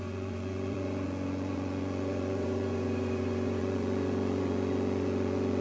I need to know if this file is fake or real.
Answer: fake